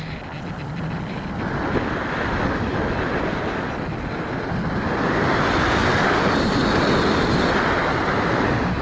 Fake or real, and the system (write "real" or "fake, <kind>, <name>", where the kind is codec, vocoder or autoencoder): real